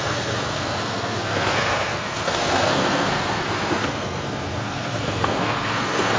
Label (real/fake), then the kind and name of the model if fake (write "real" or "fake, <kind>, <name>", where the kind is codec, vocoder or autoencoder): fake, codec, SNAC